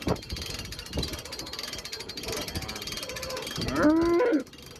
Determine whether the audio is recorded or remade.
recorded